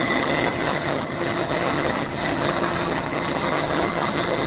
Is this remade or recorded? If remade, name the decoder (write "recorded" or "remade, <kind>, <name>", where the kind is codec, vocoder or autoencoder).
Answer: remade, vocoder, HiFi-GAN